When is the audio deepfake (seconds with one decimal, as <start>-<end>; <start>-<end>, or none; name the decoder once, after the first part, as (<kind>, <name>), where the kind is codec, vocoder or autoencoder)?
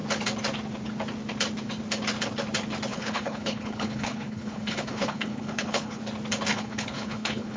2.9-6.0 (codec, HILCodec); 6.5-7.6